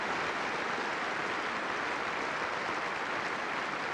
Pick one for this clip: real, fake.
real